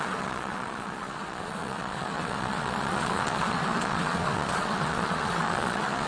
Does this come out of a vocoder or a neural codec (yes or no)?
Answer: yes